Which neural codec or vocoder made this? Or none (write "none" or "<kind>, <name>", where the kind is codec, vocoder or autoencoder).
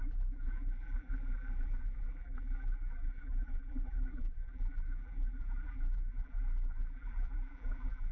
vocoder, BigVGAN v2